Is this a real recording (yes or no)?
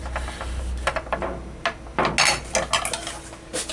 yes